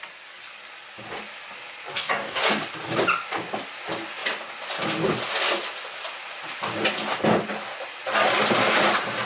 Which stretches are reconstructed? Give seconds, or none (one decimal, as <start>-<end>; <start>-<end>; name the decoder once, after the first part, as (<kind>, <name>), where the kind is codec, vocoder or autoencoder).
1.9-2.4 (codec, DAC)